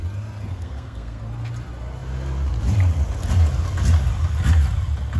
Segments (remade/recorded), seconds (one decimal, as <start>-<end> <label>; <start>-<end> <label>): 0.0-0.5 recorded; 0.5-1.2 remade; 1.2-5.2 recorded